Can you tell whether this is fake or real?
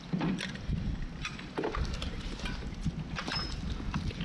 fake